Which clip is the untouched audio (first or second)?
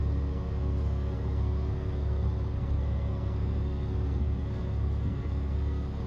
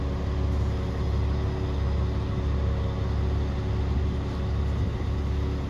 second